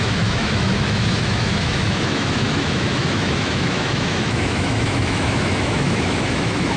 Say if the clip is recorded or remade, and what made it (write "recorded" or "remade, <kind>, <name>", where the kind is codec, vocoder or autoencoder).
remade, autoencoder, DAC-VAE